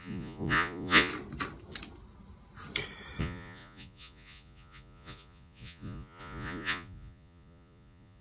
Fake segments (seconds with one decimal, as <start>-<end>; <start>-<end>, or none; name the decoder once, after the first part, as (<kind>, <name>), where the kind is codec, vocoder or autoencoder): 0.0-1.1 (vocoder, Vocos); 3.2-8.2